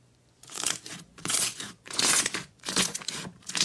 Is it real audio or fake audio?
fake